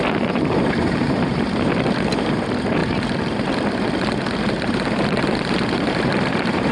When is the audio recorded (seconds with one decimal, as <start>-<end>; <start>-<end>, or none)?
2.8-4.5